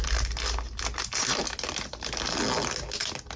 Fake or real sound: real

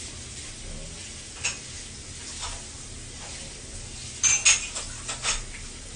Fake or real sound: real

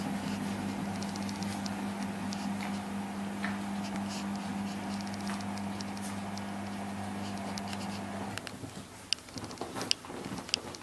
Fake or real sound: real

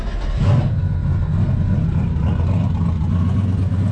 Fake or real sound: real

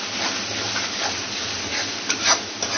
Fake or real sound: real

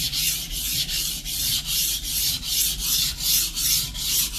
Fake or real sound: real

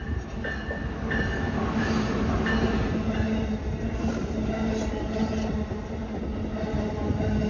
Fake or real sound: real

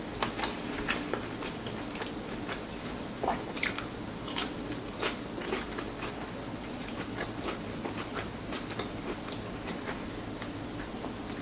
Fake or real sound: real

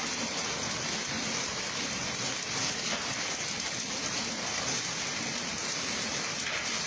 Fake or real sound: fake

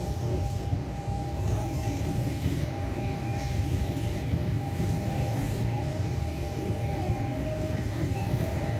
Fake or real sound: fake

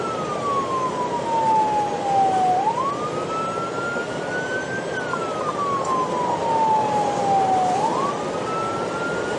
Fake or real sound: real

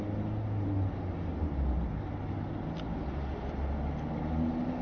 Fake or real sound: real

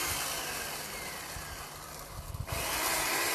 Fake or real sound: real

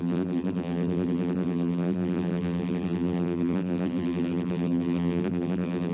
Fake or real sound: fake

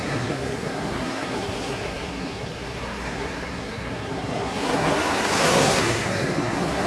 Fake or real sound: fake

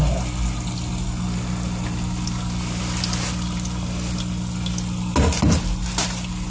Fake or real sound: real